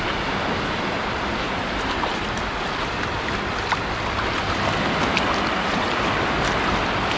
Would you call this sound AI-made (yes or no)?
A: no